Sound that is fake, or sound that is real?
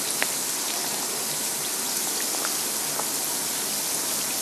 real